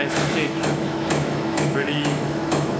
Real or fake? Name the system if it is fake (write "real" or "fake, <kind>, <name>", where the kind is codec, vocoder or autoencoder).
fake, autoencoder, DAC-VAE